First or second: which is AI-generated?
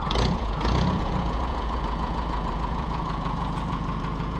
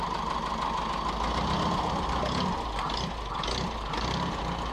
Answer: first